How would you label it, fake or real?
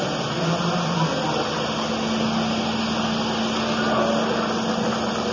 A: real